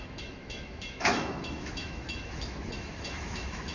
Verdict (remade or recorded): remade